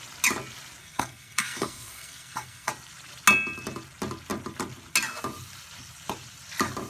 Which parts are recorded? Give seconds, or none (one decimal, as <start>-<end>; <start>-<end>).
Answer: 0.0-0.8; 2.7-6.9